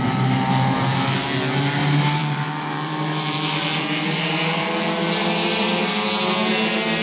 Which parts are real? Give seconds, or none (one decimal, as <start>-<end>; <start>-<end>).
0.0-1.8; 4.6-7.0